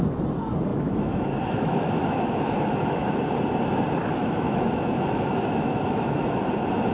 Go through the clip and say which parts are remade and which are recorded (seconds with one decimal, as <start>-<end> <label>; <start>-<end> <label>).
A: 0.0-0.7 recorded; 0.7-3.2 remade; 3.2-4.2 recorded; 4.2-6.5 remade; 6.5-6.9 recorded